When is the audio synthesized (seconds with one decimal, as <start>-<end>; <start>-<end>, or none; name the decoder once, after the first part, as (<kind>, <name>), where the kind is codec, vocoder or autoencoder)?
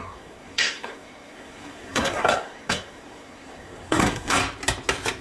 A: 0.0-4.4 (codec, SNAC)